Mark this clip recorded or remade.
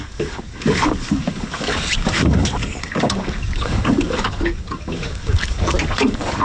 remade